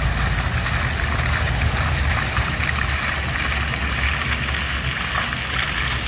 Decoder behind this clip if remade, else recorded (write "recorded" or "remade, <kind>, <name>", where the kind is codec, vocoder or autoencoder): recorded